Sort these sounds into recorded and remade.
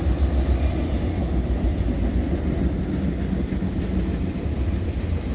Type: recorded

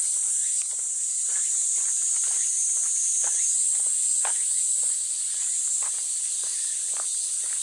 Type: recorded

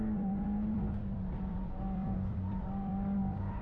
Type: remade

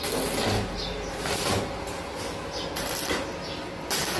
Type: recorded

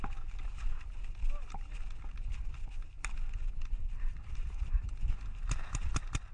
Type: recorded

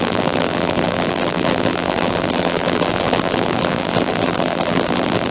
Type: remade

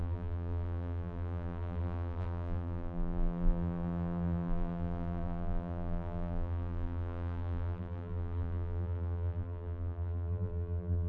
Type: remade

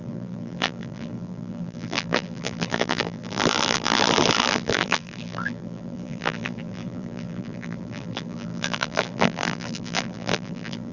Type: remade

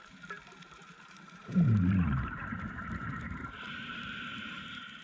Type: remade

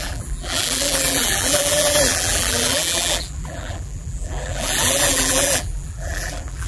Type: remade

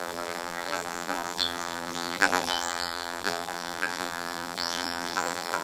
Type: remade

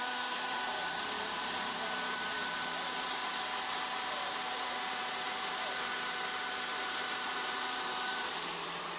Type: remade